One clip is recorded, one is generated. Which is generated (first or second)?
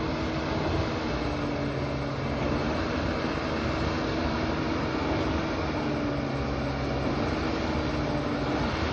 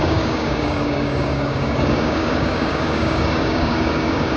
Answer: second